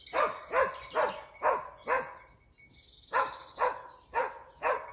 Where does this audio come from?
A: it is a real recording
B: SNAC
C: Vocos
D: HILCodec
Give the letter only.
A